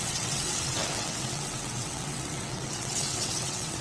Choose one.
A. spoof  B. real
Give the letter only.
A